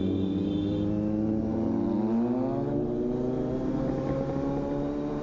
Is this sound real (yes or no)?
yes